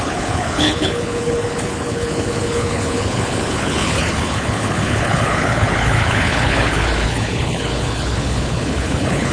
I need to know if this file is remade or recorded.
remade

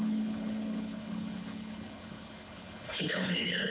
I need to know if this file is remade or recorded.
remade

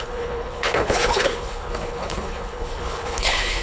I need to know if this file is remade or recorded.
remade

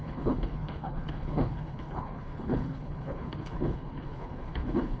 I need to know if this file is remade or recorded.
remade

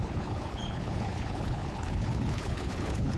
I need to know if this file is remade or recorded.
remade